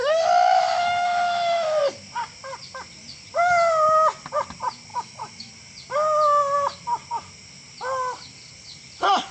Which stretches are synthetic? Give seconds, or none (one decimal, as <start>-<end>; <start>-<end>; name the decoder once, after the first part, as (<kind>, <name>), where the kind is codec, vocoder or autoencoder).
0.0-1.8 (autoencoder, DAC-VAE); 4.9-5.5